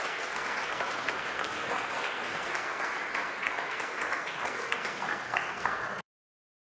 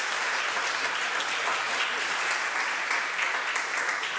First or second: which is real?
second